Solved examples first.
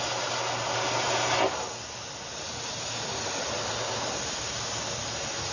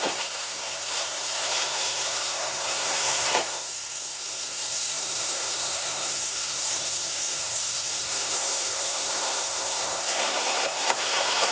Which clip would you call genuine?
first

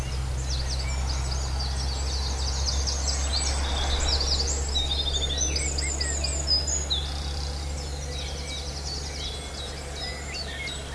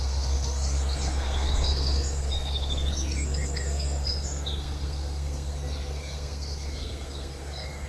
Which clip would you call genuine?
first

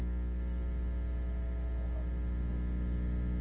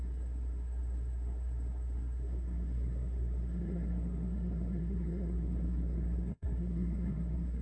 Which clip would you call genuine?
first